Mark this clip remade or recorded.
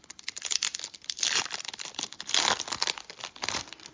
remade